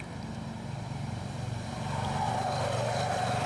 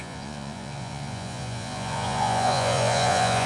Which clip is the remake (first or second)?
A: second